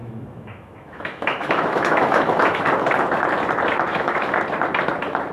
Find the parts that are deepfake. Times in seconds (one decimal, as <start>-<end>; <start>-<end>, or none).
0.0-2.6; 3.9-4.4